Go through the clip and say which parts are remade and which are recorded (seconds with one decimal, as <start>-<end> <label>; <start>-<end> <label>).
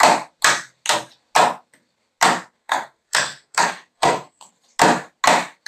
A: 0.0-2.6 recorded; 2.6-4.5 remade; 4.5-5.7 recorded